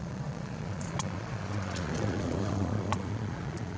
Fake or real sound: fake